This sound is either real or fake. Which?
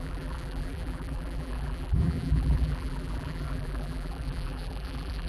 fake